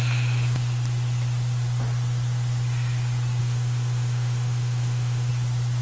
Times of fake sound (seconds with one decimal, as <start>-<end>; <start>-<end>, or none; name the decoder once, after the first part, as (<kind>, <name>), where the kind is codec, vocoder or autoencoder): 3.4-5.3 (autoencoder, DAC-VAE)